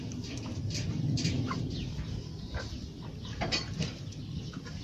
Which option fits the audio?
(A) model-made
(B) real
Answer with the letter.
B